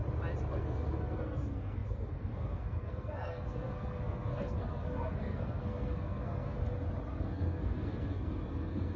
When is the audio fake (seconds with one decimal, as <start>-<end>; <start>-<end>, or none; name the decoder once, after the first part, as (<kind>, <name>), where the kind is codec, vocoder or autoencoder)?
0.5-6.6 (codec, SNAC); 7.2-9.0

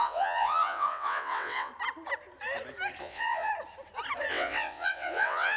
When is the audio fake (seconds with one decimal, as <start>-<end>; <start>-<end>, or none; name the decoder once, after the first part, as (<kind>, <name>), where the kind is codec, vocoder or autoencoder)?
0.0-1.7 (vocoder, WaveNeXt); 3.0-3.5; 4.3-5.6

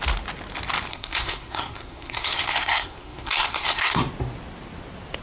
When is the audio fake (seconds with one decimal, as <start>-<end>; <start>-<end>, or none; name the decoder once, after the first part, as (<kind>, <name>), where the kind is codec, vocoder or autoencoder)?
0.9-4.0 (codec, SNAC)

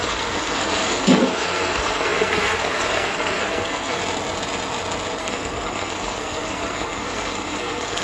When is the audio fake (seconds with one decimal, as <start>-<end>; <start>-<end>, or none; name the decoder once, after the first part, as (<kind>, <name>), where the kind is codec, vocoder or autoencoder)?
0.0-4.0 (codec, SNAC); 5.2-8.0

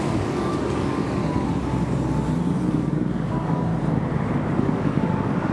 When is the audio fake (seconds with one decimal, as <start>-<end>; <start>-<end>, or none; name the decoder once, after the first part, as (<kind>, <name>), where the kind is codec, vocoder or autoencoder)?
0.0-1.2 (codec, DAC); 2.7-3.7; 4.3-5.5

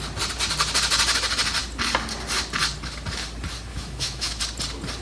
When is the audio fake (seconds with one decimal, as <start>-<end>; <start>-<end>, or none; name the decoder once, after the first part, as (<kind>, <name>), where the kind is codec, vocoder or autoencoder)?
3.7-4.4 (autoencoder, DAC-VAE)